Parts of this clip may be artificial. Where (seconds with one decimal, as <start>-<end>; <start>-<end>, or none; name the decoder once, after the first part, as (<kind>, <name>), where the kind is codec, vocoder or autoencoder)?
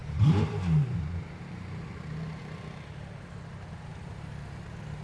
0.0-2.4 (vocoder, BigVGAN v2)